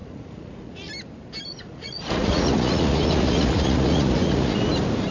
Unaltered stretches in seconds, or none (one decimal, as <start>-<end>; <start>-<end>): 0.9-1.5; 4.6-5.1